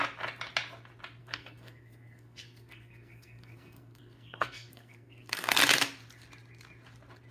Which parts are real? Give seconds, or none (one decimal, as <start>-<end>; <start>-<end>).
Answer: 0.0-1.2; 5.6-7.3